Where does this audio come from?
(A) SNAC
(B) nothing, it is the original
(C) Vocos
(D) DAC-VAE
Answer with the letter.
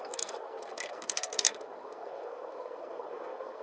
A